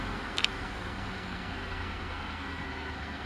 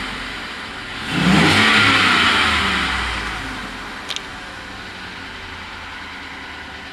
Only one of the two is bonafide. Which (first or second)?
second